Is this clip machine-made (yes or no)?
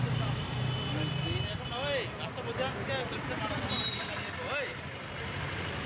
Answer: no